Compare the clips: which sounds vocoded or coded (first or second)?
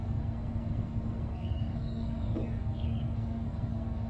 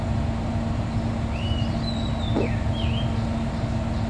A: first